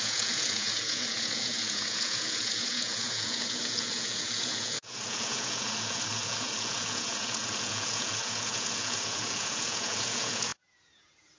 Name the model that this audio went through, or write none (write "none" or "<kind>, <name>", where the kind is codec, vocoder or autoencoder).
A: vocoder, Vocos